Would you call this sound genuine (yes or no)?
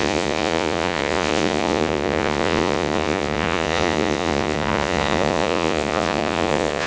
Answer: no